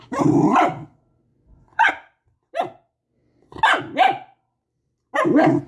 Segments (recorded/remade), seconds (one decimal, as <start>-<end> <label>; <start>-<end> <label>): 0.0-1.3 recorded; 1.3-1.9 remade; 1.9-5.7 recorded